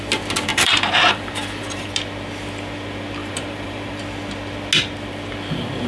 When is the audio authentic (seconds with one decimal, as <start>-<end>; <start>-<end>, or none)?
0.0-0.5; 1.9-3.2; 4.0-5.9